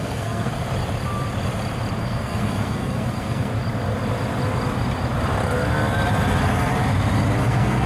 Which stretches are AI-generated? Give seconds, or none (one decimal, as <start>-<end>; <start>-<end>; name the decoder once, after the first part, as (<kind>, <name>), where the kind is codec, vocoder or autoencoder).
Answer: 0.0-0.5 (codec, SNAC); 2.0-3.5; 7.4-7.9